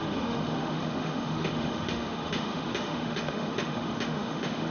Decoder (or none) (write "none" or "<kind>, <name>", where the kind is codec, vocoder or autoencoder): autoencoder, DAC-VAE